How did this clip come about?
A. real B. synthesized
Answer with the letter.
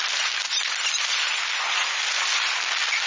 A